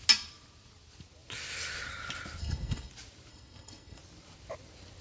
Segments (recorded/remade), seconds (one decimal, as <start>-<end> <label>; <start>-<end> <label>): 0.0-2.4 recorded; 2.4-2.9 remade; 2.9-3.3 recorded; 3.3-4.0 remade; 4.0-5.0 recorded